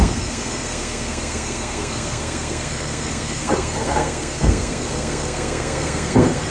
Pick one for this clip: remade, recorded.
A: remade